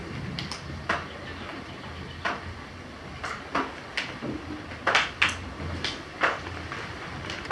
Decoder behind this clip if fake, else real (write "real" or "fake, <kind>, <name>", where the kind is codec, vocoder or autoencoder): real